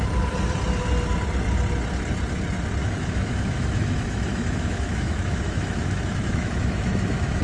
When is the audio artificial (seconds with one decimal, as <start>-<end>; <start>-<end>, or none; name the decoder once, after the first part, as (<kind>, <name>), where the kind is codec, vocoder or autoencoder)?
2.8-7.4 (autoencoder, DAC-VAE)